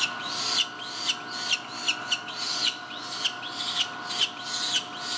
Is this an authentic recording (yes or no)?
yes